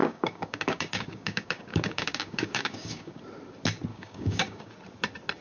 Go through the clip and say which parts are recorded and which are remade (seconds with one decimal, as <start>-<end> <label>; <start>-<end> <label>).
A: 0.0-3.2 remade; 3.2-3.9 recorded; 3.9-4.7 remade; 4.7-5.4 recorded

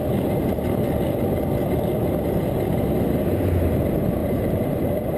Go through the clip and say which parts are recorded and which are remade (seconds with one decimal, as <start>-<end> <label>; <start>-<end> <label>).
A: 0.0-4.2 recorded; 4.2-4.8 remade; 4.8-5.2 recorded

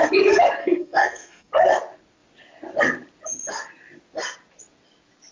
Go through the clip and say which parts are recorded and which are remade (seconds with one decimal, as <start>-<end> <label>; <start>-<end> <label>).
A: 0.0-0.6 recorded; 0.6-1.5 remade; 1.5-5.3 recorded

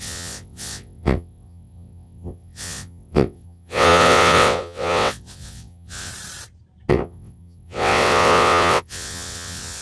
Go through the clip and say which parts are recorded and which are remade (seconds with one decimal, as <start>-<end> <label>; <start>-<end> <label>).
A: 0.0-6.1 remade; 6.1-6.9 recorded; 6.9-9.8 remade

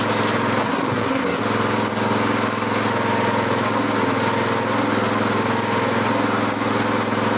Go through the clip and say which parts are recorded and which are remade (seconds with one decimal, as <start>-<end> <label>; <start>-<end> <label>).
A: 0.0-0.6 recorded; 0.6-1.4 remade; 1.4-7.4 recorded